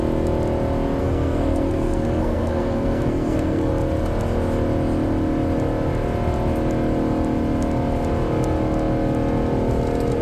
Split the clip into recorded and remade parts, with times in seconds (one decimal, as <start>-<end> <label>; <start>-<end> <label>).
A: 0.0-1.0 recorded; 1.0-3.7 remade; 3.7-10.2 recorded